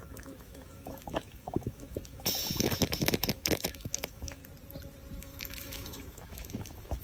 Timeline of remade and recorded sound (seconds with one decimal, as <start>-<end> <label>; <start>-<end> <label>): 0.0-4.4 remade; 4.4-5.2 recorded; 5.2-7.0 remade